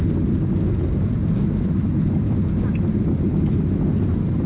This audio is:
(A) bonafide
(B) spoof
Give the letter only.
A